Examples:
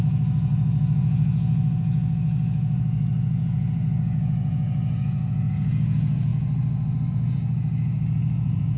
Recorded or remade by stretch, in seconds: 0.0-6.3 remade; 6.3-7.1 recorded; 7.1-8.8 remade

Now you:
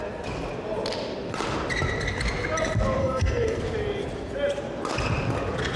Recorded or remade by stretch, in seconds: 0.0-3.0 recorded; 3.0-3.6 remade; 3.6-5.8 recorded

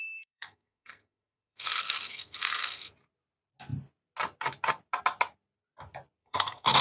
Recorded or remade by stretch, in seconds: 0.0-2.9 remade; 2.9-6.2 recorded; 6.2-6.8 remade

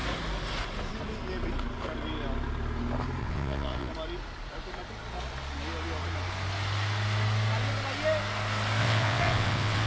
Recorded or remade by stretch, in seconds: 0.0-3.2 recorded; 3.2-3.9 remade; 3.9-8.8 recorded; 8.8-9.9 remade

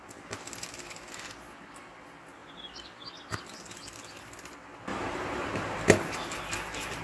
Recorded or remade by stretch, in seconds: 0.0-2.4 recorded; 2.4-3.1 remade; 3.1-7.0 recorded